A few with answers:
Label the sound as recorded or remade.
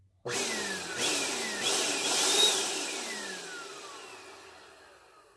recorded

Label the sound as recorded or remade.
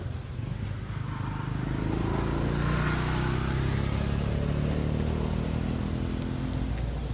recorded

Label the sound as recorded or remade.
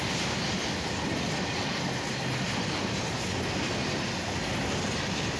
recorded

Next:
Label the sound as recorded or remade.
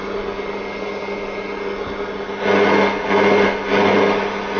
recorded